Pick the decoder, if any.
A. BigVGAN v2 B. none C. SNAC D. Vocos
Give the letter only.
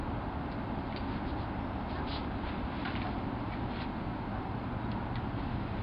B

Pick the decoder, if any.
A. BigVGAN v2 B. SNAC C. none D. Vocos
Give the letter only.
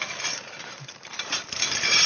A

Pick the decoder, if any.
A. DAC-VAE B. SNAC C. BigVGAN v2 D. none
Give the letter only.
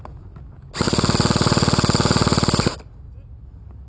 D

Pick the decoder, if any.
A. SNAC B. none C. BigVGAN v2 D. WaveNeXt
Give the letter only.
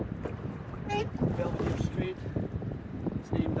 C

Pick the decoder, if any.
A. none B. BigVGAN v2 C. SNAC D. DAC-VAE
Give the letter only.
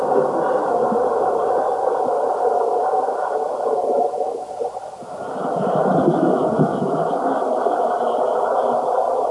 A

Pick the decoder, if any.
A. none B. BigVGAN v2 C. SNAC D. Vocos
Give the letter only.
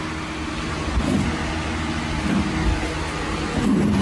A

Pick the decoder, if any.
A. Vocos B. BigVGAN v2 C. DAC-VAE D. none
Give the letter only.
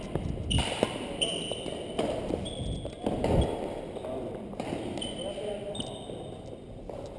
D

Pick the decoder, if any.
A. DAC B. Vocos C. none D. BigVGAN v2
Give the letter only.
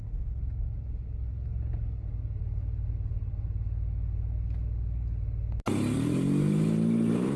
C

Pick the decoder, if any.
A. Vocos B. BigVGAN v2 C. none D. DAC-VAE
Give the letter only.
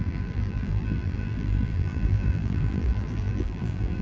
B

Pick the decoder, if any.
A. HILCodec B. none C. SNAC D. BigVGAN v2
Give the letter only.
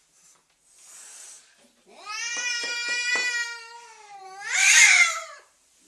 D